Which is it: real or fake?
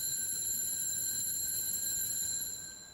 real